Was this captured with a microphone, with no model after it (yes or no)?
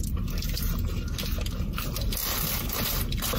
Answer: yes